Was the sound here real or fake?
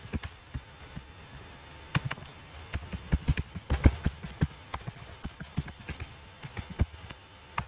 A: real